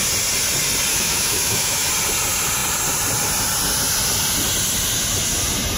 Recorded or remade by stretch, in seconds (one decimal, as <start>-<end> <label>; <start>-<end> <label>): 0.0-0.9 recorded; 0.9-1.9 remade; 1.9-5.8 recorded